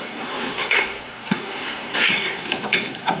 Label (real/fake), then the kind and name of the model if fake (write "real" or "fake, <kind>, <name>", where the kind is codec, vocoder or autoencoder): fake, codec, SNAC